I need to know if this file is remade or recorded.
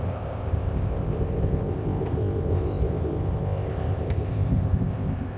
remade